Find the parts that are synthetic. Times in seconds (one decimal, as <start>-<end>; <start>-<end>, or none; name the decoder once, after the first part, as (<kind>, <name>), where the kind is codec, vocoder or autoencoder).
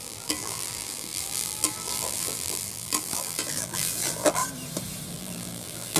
0.0-4.4 (vocoder, BigVGAN v2); 5.1-6.0